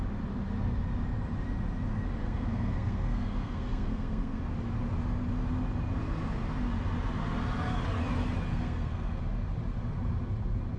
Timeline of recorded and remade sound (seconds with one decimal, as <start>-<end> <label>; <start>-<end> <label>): 0.0-2.2 recorded; 2.2-4.4 remade; 4.4-8.5 recorded; 8.5-9.2 remade; 9.2-10.8 recorded